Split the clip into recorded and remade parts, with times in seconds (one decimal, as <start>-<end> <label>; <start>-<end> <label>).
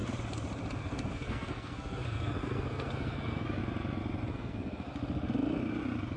0.0-0.8 recorded; 0.8-3.6 remade; 3.6-4.3 recorded; 4.3-4.9 remade; 4.9-6.2 recorded